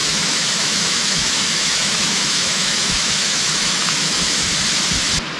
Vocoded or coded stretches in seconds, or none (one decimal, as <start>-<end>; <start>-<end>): 0.0-4.5